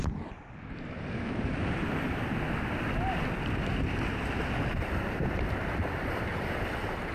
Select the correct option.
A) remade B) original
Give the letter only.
B